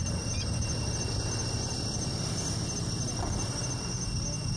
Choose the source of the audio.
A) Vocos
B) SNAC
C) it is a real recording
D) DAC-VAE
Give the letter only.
C